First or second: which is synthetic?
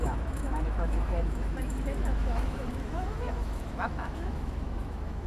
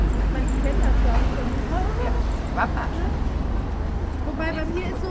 first